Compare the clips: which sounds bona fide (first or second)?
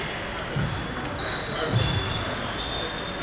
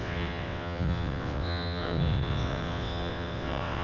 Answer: first